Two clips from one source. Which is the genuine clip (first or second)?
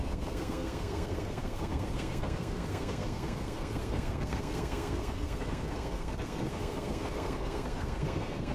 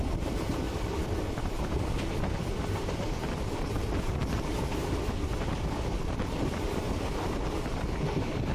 second